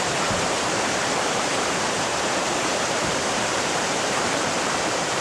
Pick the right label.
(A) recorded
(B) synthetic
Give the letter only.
B